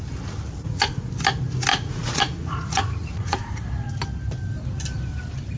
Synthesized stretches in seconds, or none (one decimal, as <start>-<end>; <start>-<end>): 0.6-1.1; 1.7-3.5